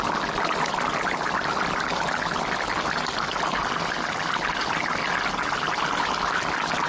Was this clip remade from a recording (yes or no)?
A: no